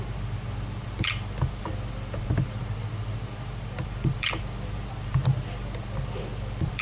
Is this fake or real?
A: fake